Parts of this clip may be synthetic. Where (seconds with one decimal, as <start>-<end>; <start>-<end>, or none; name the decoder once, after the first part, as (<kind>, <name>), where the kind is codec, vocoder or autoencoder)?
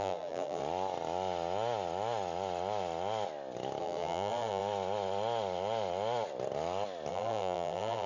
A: 0.0-0.6 (vocoder, BigVGAN v2); 3.8-4.6; 7.1-8.1